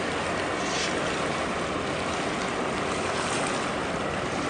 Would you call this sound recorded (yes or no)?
yes